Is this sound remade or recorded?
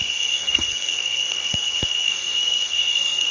remade